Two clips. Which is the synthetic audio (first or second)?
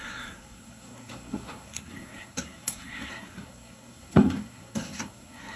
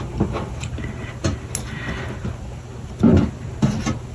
first